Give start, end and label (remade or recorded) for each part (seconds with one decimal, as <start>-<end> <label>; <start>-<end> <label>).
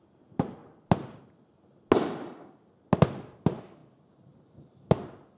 0.0-5.4 recorded